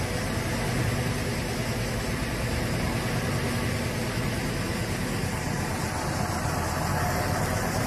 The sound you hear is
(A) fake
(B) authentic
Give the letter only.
B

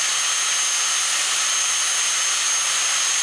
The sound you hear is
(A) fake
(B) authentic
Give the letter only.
B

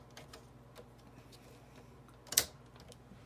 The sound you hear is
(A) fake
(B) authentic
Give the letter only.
B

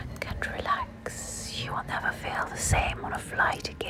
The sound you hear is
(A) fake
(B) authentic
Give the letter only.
B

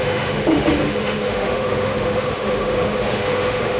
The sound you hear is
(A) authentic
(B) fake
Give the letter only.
B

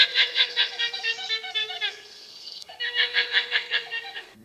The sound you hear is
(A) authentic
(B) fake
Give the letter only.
B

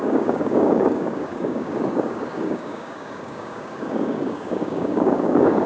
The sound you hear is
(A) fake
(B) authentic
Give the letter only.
A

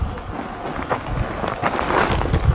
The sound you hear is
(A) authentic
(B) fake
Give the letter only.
A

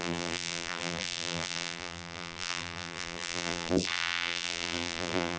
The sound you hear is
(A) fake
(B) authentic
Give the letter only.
A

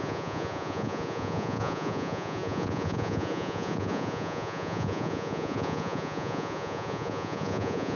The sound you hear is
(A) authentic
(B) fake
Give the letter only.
B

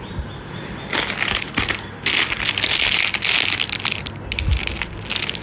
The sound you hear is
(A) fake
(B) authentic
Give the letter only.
B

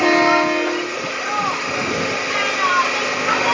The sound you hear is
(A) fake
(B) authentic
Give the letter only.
B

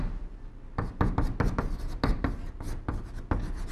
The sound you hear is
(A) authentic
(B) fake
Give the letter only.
A